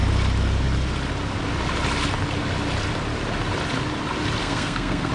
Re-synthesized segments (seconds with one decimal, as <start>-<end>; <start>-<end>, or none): 4.4-5.1